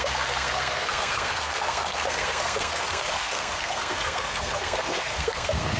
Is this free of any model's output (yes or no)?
no